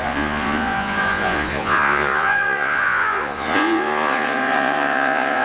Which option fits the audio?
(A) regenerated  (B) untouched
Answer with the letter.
A